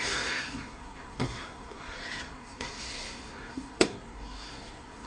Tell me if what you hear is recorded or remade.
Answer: remade